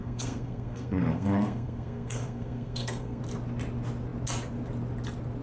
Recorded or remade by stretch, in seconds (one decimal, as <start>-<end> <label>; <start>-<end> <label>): 0.0-3.2 remade; 3.2-5.4 recorded

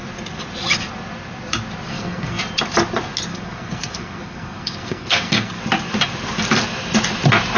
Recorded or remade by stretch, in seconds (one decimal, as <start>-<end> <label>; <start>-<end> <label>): 0.0-1.9 recorded; 1.9-2.4 remade; 2.4-3.3 recorded; 3.3-5.6 remade; 5.6-7.6 recorded

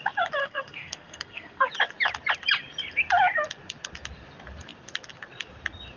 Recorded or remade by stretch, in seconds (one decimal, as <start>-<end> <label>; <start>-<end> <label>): 0.0-0.4 recorded; 0.4-1.7 remade; 1.7-6.0 recorded

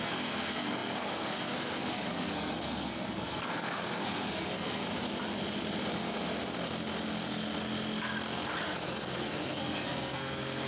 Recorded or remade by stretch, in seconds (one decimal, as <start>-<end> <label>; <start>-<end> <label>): 0.0-4.8 remade; 4.8-8.6 recorded; 8.6-10.7 remade

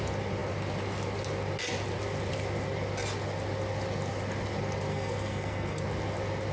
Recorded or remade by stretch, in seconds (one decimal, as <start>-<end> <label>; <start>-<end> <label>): 0.0-4.9 recorded; 4.9-5.8 remade; 5.8-6.5 recorded

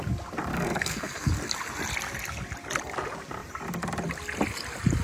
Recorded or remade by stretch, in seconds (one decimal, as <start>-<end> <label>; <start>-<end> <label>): 0.0-0.5 recorded; 0.5-1.3 remade; 1.3-5.0 recorded